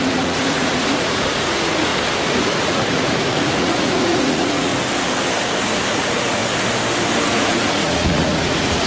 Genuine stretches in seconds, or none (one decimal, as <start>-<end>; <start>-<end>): 1.9-2.4; 4.7-5.9; 6.4-7.3